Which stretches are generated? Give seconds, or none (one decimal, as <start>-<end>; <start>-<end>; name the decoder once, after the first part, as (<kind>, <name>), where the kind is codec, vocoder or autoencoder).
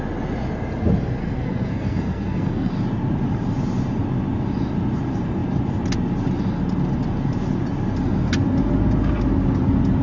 1.2-2.7 (codec, SNAC)